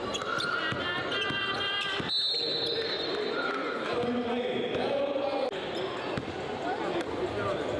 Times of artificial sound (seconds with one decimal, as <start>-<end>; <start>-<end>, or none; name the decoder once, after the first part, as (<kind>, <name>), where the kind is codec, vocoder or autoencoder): none